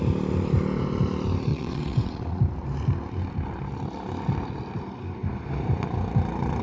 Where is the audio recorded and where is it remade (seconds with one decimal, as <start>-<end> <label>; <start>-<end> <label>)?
0.0-1.5 recorded; 1.5-2.4 remade; 2.4-6.6 recorded